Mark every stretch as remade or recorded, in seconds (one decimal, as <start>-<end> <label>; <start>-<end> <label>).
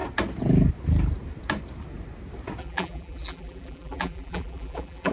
0.0-2.6 recorded; 2.6-5.1 remade